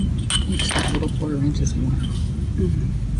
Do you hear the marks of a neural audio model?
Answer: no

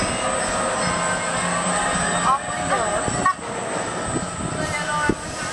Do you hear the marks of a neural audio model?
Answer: no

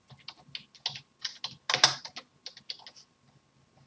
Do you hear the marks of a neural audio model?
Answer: no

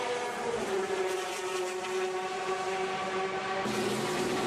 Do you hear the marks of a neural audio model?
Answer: yes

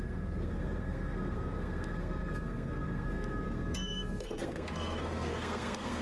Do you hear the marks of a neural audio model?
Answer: yes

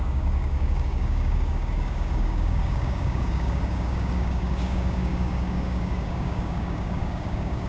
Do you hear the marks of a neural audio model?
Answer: yes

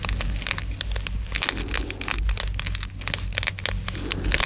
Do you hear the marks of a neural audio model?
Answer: no